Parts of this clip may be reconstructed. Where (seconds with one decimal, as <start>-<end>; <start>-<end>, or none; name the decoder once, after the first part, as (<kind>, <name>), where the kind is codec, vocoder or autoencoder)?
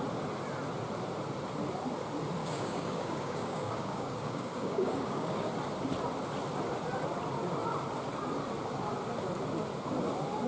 2.4-5.5 (codec, DAC)